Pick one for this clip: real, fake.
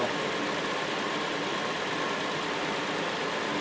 real